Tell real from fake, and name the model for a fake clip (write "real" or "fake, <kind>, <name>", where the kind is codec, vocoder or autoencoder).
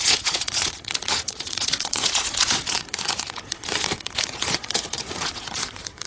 fake, vocoder, Vocos